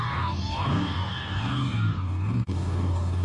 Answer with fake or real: fake